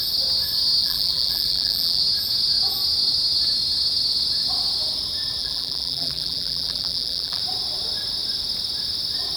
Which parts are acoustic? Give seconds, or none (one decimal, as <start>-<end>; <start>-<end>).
0.0-0.8; 2.0-5.4; 7.4-9.4